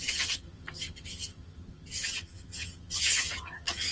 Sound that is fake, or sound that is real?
fake